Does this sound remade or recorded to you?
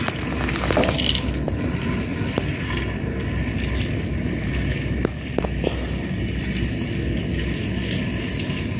recorded